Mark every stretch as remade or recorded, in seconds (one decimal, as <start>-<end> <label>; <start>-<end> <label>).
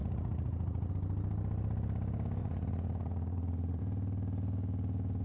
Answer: 0.0-0.9 remade; 0.9-2.4 recorded; 2.4-3.8 remade; 3.8-5.2 recorded